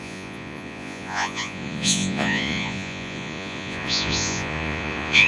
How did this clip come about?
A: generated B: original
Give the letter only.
A